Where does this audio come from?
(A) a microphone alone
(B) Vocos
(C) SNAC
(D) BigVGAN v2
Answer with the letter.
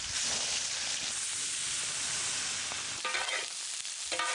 A